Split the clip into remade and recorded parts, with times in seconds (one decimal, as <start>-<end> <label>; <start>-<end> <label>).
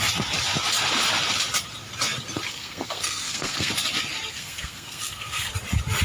0.0-2.5 recorded; 2.5-3.7 remade; 3.7-4.3 recorded; 4.3-5.5 remade; 5.5-6.0 recorded